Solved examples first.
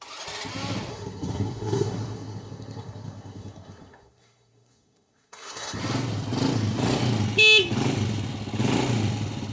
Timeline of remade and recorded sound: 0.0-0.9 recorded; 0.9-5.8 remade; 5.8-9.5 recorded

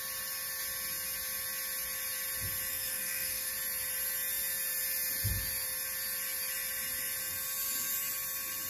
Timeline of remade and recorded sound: 0.0-2.7 recorded; 2.7-3.5 remade; 3.5-8.7 recorded

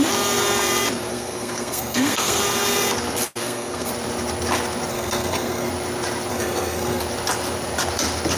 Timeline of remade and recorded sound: 0.0-1.1 recorded; 1.1-2.4 remade; 2.4-3.4 recorded; 3.4-3.9 remade; 3.9-4.9 recorded; 4.9-5.7 remade; 5.7-6.3 recorded; 6.3-7.0 remade; 7.0-8.4 recorded

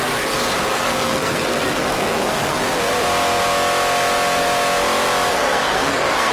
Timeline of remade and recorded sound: 0.0-0.7 recorded; 0.7-2.6 remade; 2.6-5.3 recorded; 5.3-6.3 remade

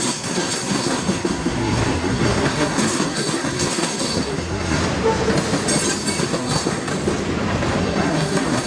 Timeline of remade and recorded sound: 0.0-4.8 remade; 4.8-6.2 recorded; 6.2-6.9 remade; 6.9-7.8 recorded; 7.8-8.7 remade